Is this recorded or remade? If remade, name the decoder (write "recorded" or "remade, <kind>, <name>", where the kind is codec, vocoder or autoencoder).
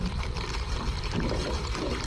recorded